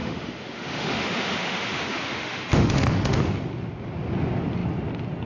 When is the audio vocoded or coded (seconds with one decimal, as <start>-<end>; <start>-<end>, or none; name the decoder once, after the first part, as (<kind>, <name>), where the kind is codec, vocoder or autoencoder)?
0.0-3.2 (autoencoder, DAC-VAE)